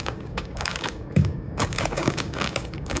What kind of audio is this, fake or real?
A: fake